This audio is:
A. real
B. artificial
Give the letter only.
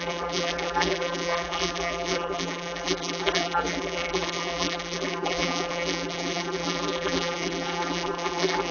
B